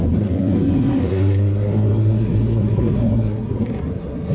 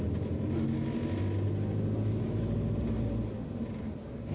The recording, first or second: second